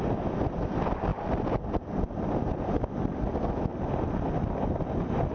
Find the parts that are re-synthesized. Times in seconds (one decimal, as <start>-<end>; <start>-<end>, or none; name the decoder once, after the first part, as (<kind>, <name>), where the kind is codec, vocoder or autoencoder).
none